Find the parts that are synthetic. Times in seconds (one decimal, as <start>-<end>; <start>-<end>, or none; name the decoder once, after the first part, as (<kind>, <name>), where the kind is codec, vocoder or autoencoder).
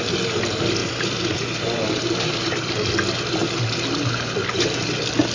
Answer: none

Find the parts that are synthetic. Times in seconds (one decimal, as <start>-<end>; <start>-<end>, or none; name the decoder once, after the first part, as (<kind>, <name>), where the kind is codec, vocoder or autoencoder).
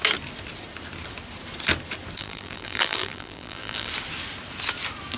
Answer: 2.2-3.9 (vocoder, BigVGAN v2)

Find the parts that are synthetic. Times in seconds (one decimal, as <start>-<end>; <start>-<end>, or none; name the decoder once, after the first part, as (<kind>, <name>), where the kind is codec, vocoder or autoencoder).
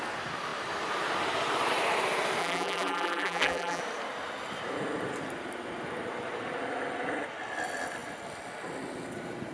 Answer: 2.4-3.8 (vocoder, BigVGAN v2)